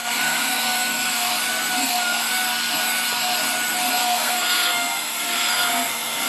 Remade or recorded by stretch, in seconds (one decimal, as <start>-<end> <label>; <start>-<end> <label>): 0.0-1.3 remade; 1.3-1.8 recorded; 1.8-2.3 remade; 2.3-4.0 recorded; 4.0-6.3 remade